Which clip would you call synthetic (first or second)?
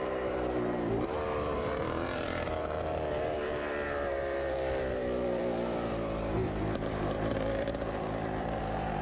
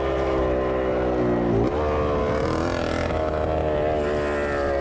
first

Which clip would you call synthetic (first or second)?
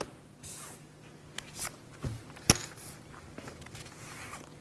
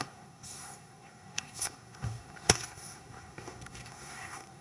second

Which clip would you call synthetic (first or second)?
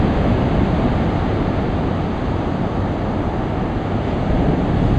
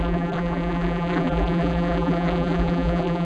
second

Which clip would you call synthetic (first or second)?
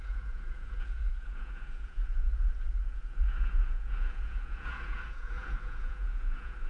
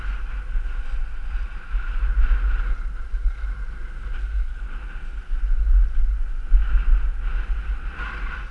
first